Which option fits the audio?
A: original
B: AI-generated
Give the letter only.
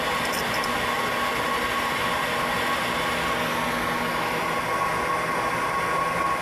A